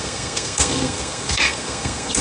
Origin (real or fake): fake